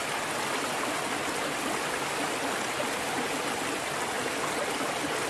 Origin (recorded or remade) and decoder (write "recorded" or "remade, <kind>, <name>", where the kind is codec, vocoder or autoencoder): recorded